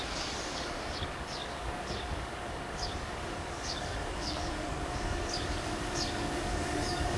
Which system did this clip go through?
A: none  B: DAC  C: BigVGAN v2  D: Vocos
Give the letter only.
B